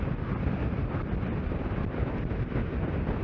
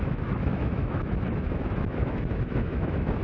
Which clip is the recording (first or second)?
first